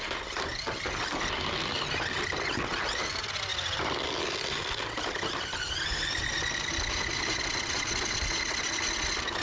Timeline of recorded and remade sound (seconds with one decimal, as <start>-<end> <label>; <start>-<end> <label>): 0.0-9.4 recorded